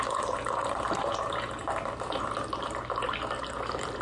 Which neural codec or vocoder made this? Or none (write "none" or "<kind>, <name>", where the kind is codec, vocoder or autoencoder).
vocoder, BigVGAN v2